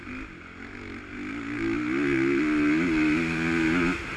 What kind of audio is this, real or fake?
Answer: real